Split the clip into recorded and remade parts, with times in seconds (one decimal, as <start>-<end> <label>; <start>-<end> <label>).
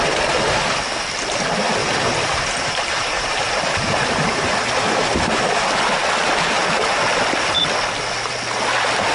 0.0-1.8 recorded; 1.8-4.4 remade; 4.4-9.1 recorded